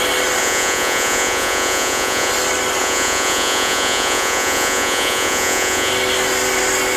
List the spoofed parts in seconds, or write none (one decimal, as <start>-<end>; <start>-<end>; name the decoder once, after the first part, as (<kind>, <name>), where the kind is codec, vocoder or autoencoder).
0.4-2.3 (vocoder, Vocos); 2.8-5.9